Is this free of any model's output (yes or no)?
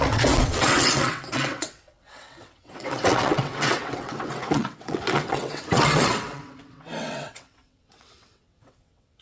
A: no